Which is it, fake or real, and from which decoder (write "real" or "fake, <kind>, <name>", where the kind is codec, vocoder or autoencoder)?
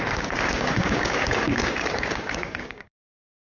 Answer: fake, codec, DAC